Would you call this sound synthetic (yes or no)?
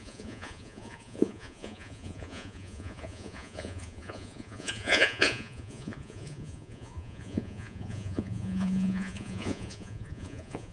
yes